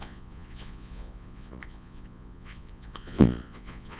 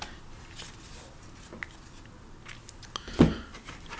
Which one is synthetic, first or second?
first